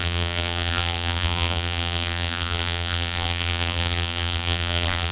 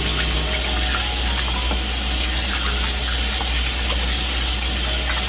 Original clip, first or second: second